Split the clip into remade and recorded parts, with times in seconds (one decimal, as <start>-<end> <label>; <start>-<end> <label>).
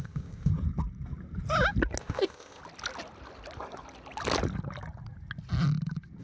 0.0-0.5 remade; 0.5-2.0 recorded; 2.0-2.6 remade; 2.6-6.2 recorded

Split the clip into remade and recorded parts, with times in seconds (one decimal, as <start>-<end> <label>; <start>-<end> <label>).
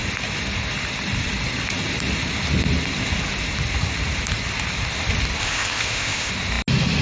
0.0-5.4 recorded; 5.4-6.3 remade; 6.3-7.0 recorded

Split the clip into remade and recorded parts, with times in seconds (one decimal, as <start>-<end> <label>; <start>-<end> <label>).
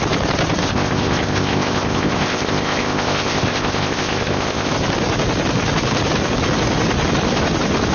0.0-0.6 recorded; 0.6-4.7 remade; 4.7-7.9 recorded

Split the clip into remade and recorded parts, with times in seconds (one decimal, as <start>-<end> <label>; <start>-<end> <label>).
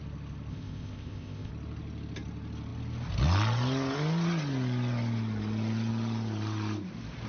0.0-0.5 recorded; 0.5-1.5 remade; 1.5-7.3 recorded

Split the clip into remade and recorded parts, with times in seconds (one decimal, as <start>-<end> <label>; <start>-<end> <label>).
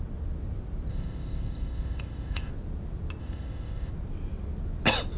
0.0-0.9 recorded; 0.9-2.5 remade; 2.5-3.2 recorded; 3.2-3.9 remade; 3.9-5.2 recorded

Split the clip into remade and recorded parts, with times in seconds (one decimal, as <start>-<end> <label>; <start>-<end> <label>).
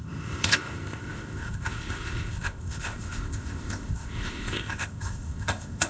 0.0-5.9 remade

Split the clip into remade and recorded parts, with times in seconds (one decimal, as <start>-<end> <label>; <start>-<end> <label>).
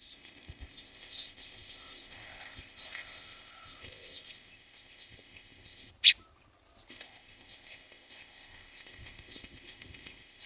0.0-5.9 remade; 5.9-6.9 recorded; 6.9-10.5 remade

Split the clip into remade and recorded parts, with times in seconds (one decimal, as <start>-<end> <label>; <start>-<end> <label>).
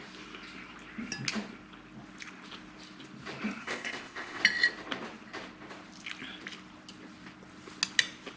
0.0-3.6 recorded; 3.6-4.4 remade; 4.4-8.4 recorded